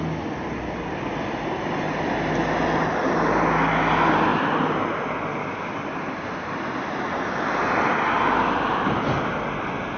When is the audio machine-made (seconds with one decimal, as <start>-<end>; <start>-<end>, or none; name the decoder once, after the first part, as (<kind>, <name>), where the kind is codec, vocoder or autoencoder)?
none